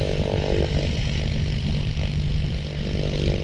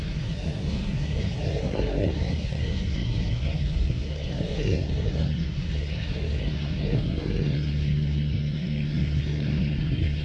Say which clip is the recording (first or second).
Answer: first